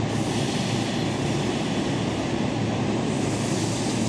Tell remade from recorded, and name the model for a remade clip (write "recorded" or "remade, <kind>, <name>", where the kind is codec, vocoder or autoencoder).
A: recorded